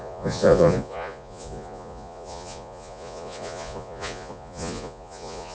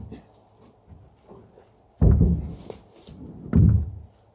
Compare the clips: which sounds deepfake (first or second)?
first